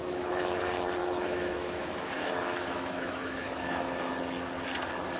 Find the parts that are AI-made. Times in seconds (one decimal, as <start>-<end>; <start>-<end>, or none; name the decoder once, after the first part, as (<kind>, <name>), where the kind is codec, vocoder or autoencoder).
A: 0.0-0.6 (autoencoder, DAC-VAE); 1.0-4.1